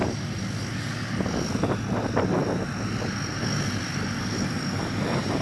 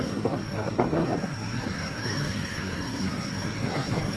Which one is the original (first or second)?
first